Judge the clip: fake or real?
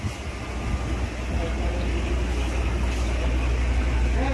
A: real